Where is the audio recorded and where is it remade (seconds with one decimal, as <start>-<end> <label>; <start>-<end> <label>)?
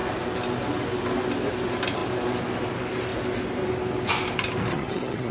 0.0-4.7 recorded; 4.7-5.3 remade